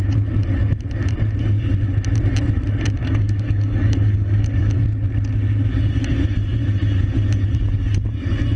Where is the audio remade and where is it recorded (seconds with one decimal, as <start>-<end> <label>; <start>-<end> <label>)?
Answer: 0.0-3.0 recorded; 3.0-4.8 remade; 4.8-8.6 recorded